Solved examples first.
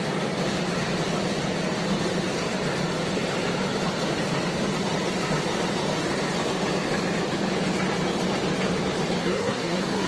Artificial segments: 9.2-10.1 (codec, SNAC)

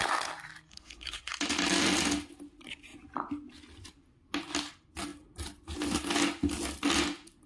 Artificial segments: 0.7-1.4 (codec, SNAC)